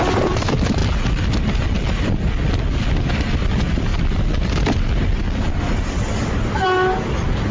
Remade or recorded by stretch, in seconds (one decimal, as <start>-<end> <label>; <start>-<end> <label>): 0.0-0.8 remade; 0.8-2.9 recorded; 2.9-7.5 remade